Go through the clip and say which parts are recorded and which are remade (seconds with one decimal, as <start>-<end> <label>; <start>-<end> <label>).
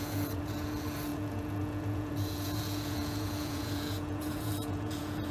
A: 0.0-5.3 remade